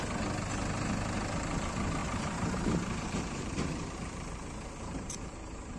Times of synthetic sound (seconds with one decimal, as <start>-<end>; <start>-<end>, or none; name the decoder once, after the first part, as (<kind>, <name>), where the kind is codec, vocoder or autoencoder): 2.0-5.8 (vocoder, BigVGAN v2)